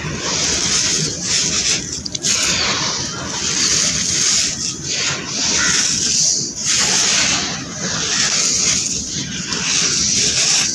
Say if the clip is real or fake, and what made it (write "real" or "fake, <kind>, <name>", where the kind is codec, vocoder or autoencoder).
real